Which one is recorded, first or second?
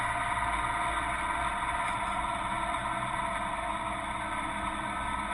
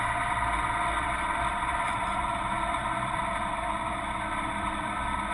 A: first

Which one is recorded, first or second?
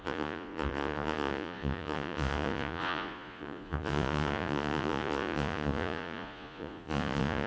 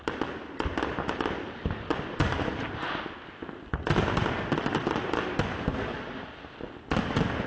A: second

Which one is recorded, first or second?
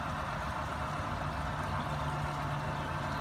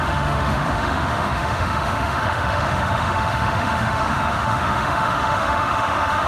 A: first